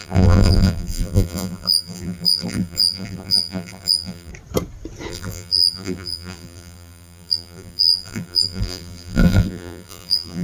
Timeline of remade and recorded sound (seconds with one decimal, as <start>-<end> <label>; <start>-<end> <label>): 0.0-4.3 remade; 4.3-5.1 recorded; 5.1-10.4 remade